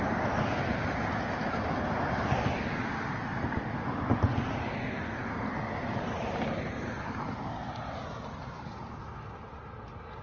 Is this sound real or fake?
real